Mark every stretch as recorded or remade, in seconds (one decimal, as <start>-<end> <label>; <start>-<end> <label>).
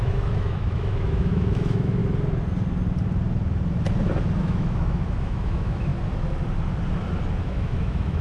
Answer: 0.0-2.0 remade; 2.0-4.4 recorded; 4.4-5.9 remade; 5.9-7.4 recorded; 7.4-8.2 remade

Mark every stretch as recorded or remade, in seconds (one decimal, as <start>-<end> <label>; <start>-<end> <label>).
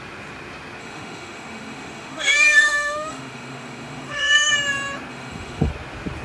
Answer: 0.0-0.8 recorded; 0.8-4.5 remade; 4.5-5.1 recorded; 5.1-5.7 remade; 5.7-6.2 recorded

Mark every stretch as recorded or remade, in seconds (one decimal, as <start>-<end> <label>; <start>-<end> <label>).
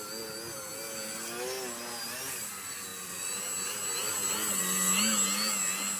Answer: 0.0-6.0 recorded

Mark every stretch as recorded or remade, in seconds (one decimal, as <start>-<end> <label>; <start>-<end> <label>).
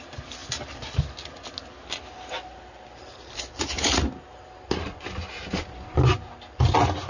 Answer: 0.0-7.1 recorded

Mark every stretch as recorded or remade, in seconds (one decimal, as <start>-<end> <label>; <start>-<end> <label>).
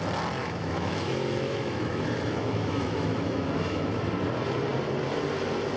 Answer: 0.0-0.4 recorded; 0.4-3.9 remade; 3.9-5.8 recorded